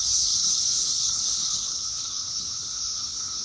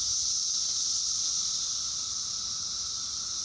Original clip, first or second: second